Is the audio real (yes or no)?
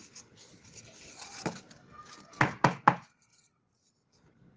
yes